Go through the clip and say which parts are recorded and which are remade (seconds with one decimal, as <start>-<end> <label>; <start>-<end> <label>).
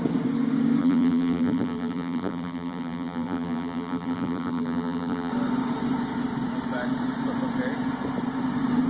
0.0-0.8 recorded; 0.8-5.3 remade; 5.3-8.9 recorded